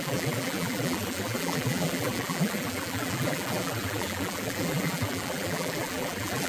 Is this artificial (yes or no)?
yes